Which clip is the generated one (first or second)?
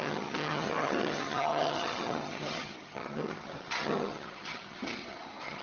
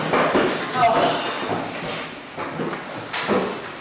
first